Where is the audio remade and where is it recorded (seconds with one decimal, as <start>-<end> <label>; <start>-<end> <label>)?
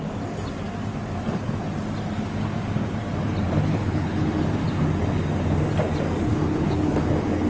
0.0-3.7 recorded; 3.7-4.3 remade; 4.3-6.3 recorded; 6.3-7.0 remade; 7.0-7.5 recorded